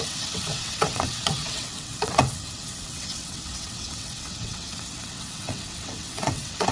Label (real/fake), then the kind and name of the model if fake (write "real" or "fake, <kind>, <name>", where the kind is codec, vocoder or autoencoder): fake, vocoder, WaveNeXt